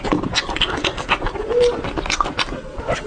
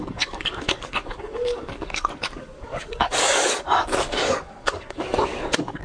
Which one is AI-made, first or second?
second